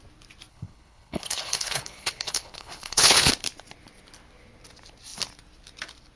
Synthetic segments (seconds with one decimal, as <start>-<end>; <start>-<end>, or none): 0.5-3.3